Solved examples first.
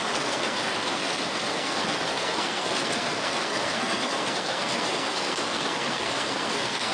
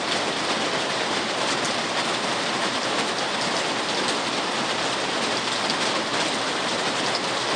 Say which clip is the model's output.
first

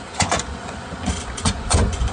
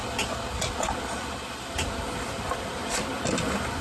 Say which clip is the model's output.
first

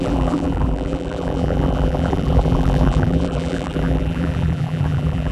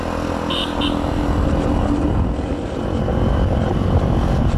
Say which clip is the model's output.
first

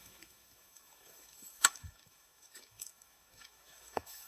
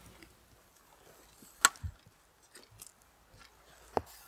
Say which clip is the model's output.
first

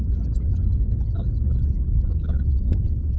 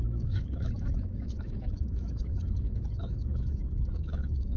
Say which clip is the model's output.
second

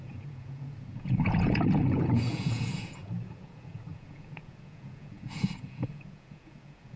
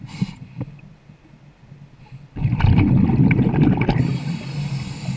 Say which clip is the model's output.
first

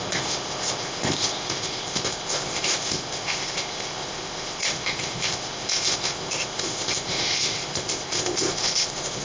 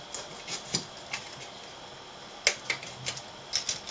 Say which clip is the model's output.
first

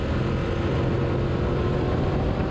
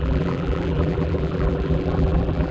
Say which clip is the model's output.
second